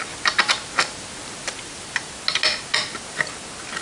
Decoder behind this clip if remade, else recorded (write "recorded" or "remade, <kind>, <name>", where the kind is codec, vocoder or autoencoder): recorded